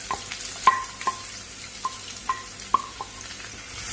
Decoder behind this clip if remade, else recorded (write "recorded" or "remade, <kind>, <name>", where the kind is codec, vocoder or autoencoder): recorded